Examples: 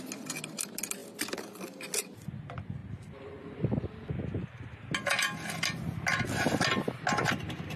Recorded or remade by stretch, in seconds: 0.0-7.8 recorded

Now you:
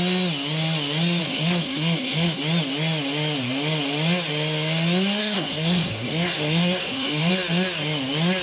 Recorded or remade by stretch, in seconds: 0.0-1.2 recorded; 1.2-2.4 remade; 2.4-5.2 recorded; 5.2-7.3 remade; 7.3-8.4 recorded

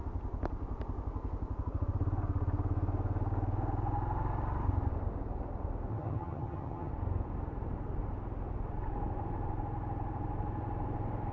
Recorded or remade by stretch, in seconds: 0.0-5.9 recorded; 5.9-6.9 remade; 6.9-11.3 recorded

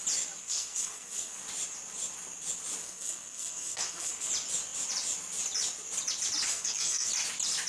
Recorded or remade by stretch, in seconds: 0.0-0.4 recorded; 0.4-1.4 remade; 1.4-2.8 recorded; 2.8-4.3 remade; 4.3-6.5 recorded; 6.5-7.1 remade; 7.1-7.7 recorded